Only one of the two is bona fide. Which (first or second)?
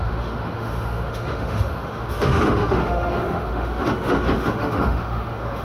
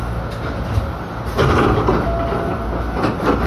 second